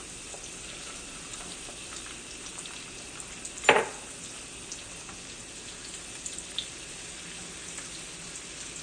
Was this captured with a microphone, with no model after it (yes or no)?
yes